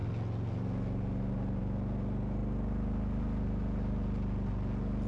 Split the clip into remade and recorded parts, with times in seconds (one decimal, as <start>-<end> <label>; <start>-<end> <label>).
0.0-5.1 recorded